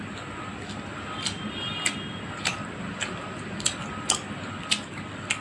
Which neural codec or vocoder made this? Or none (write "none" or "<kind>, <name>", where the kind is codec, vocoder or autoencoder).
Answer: none